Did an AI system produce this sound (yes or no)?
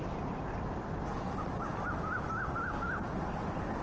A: no